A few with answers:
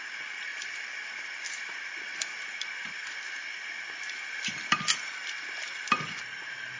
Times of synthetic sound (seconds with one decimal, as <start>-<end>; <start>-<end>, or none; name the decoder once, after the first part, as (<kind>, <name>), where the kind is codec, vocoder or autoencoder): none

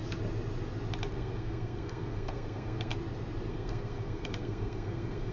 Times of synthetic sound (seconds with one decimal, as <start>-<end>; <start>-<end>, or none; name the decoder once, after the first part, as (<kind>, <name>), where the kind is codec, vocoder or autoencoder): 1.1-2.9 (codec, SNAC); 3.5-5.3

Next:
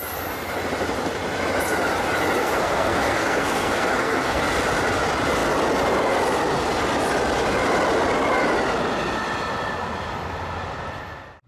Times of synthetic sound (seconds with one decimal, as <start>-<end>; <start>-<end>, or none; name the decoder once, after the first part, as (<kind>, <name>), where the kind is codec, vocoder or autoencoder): 2.4-4.4 (codec, SNAC)

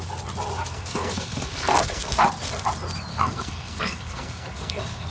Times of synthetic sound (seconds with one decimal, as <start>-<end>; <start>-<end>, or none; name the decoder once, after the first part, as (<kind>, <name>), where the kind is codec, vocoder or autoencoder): 0.7-2.3 (codec, SNAC); 3.1-5.1

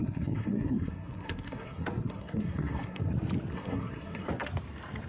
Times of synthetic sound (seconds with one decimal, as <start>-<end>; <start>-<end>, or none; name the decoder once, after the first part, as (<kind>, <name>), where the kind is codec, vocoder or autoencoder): 0.0-3.1 (codec, SNAC); 3.5-4.3

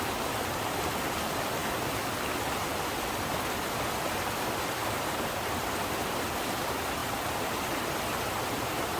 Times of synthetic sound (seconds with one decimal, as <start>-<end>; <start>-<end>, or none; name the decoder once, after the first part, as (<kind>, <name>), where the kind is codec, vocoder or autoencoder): none